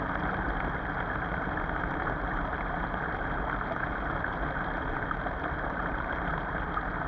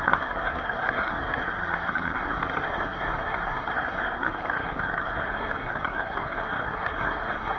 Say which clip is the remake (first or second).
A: second